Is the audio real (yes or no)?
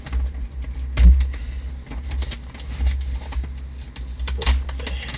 yes